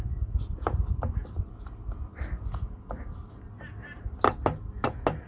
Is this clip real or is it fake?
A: real